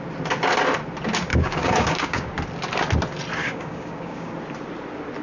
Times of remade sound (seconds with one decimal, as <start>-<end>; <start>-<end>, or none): 1.3-2.3; 3.4-4.3